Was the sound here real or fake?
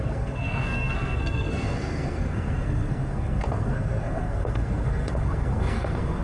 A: fake